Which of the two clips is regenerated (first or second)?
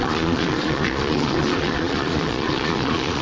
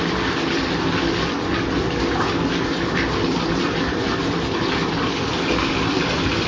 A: first